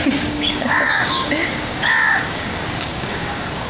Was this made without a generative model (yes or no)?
no